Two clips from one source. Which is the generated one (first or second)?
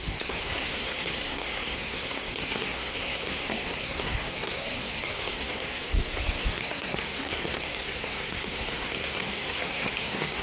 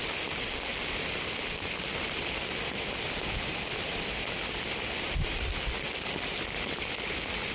first